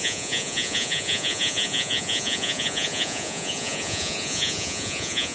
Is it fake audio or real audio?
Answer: fake